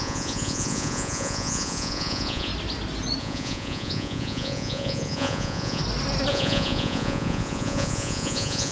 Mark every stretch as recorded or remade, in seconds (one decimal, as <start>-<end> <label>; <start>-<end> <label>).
0.0-2.5 remade; 2.5-3.2 recorded; 3.2-5.8 remade; 5.8-6.3 recorded; 6.3-8.7 remade